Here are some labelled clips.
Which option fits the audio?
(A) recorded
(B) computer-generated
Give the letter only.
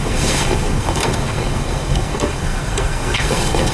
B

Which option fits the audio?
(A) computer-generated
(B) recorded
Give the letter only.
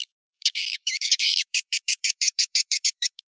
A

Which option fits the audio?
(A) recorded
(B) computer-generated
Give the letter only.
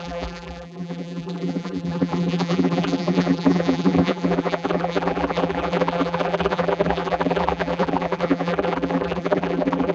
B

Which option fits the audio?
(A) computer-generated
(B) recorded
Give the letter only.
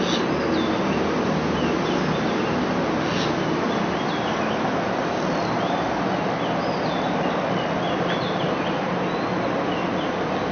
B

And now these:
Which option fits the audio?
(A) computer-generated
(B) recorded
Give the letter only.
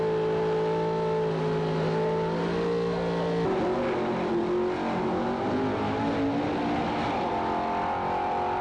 B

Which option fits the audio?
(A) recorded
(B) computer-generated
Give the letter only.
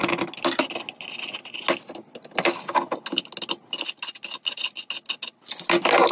A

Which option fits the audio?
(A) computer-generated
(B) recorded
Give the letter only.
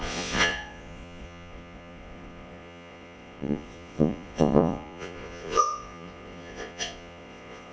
A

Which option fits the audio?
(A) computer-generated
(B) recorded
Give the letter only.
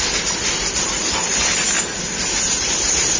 B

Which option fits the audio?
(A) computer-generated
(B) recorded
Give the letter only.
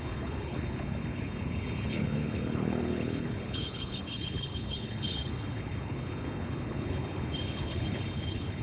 A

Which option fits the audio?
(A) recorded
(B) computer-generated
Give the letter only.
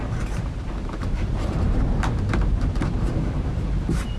B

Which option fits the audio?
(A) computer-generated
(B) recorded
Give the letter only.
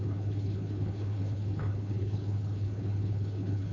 A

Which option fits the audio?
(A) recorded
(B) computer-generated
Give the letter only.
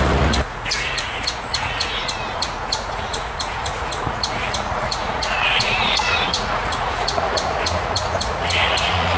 B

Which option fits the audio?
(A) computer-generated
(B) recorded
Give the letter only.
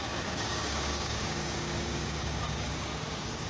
A